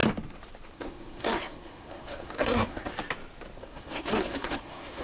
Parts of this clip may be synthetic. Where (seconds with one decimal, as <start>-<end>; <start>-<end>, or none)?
0.7-2.9; 3.6-5.0

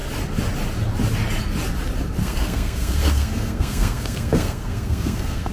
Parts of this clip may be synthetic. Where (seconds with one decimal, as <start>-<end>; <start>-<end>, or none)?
2.2-5.5

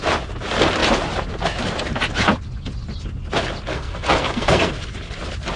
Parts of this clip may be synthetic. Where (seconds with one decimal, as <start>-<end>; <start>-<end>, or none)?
3.7-4.7

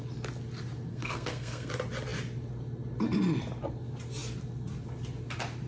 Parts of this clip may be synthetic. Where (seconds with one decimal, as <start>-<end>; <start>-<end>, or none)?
0.9-1.7

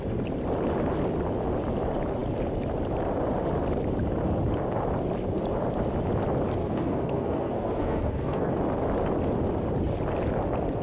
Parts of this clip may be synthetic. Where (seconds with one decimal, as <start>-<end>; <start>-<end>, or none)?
6.6-8.5

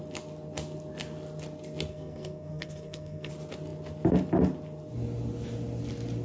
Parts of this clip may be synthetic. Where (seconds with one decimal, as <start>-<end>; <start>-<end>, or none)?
1.9-3.3

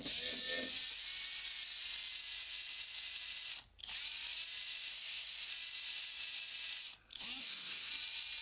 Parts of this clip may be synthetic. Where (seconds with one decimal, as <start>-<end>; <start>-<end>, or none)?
4.9-5.5; 7.4-7.9

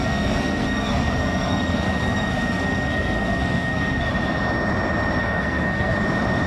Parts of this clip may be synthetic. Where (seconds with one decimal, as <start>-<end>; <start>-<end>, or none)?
0.0-4.1; 5.2-5.9